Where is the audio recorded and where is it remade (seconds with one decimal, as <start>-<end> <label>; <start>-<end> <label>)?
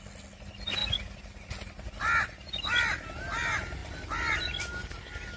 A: 0.0-5.4 recorded